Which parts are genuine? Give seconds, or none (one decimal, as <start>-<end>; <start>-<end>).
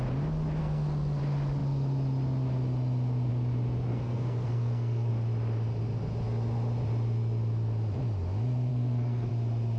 0.0-0.6; 1.2-3.9; 5.1-8.7; 9.3-9.8